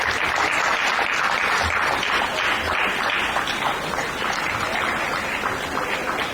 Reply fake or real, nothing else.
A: real